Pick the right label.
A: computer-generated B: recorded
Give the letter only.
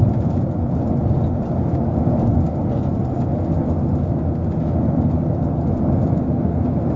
B